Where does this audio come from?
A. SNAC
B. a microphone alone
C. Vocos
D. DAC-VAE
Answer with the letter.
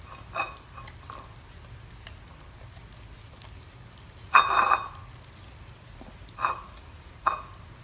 B